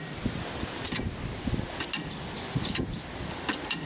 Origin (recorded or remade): recorded